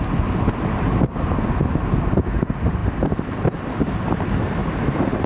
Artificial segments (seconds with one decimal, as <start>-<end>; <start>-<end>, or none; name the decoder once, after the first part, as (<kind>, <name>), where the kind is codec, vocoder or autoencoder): none